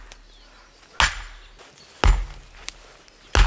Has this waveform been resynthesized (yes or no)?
no